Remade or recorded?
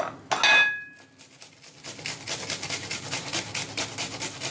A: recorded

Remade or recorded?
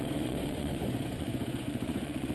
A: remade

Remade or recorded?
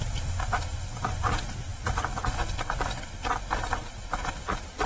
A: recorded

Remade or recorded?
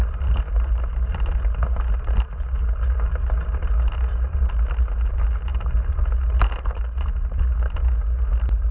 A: recorded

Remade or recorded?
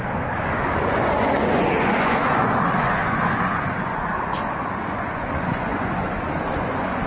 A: remade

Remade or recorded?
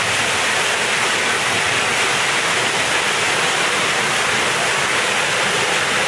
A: recorded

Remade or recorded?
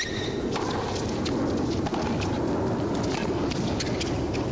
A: recorded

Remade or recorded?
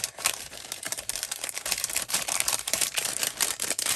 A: remade